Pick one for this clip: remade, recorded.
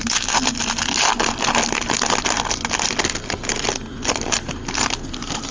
recorded